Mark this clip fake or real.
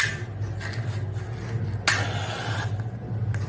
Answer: real